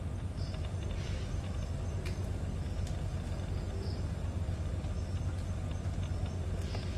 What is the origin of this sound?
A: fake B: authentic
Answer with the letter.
B